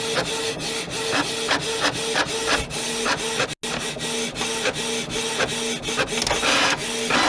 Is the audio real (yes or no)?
yes